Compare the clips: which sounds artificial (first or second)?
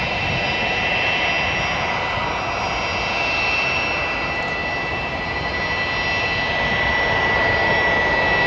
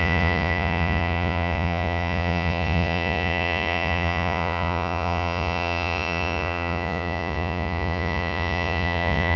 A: second